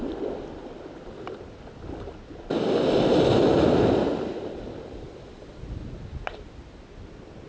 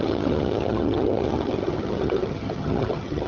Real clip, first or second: first